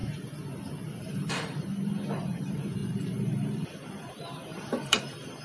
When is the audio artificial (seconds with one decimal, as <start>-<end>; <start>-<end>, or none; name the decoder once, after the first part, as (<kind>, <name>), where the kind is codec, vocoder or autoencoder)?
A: 1.0-5.4 (vocoder, BigVGAN v2)